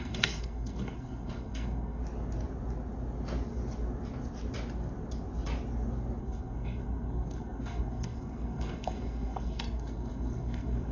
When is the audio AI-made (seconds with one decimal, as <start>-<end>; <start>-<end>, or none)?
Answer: 0.0-2.0; 6.2-10.9